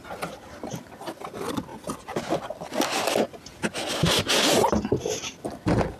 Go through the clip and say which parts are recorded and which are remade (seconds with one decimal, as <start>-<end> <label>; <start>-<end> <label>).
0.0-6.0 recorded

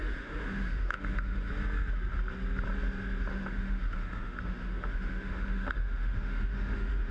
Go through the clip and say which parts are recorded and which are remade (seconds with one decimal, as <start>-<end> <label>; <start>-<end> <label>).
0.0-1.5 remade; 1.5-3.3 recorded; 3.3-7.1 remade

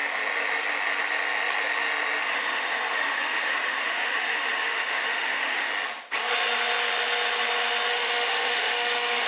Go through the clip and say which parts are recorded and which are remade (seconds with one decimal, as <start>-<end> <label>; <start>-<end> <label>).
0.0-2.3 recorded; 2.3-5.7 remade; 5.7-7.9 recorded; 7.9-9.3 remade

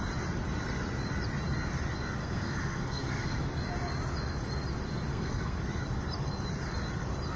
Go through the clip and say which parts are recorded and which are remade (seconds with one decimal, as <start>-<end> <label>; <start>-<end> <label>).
0.0-2.2 recorded; 2.2-3.4 remade; 3.4-5.1 recorded; 5.1-5.6 remade; 5.6-7.4 recorded

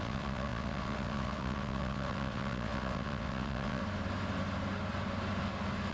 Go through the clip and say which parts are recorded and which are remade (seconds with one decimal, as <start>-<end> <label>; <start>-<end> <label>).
0.0-3.8 remade; 3.8-5.9 recorded

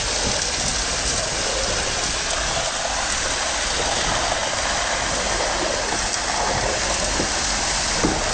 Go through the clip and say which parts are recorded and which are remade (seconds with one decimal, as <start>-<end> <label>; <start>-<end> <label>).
0.0-8.3 recorded

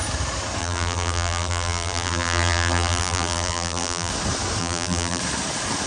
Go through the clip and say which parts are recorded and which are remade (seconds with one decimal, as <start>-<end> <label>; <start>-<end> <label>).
0.0-0.6 recorded; 0.6-4.1 remade; 4.1-4.6 recorded; 4.6-5.2 remade; 5.2-5.9 recorded